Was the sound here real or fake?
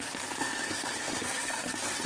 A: fake